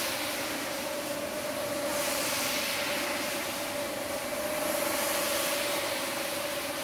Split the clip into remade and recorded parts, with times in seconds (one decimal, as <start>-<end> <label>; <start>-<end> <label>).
0.0-6.8 recorded